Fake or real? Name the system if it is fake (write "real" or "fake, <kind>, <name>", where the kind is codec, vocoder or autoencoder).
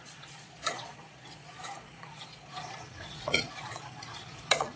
fake, vocoder, Vocos